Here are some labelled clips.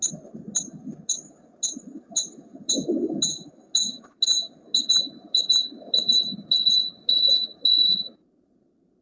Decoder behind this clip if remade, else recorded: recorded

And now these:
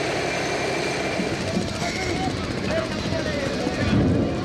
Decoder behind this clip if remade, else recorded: recorded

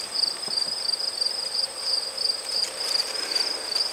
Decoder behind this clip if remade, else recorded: recorded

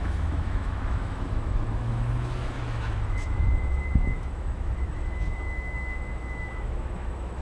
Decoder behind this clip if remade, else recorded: remade, autoencoder, DAC-VAE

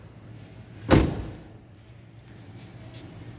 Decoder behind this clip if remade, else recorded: recorded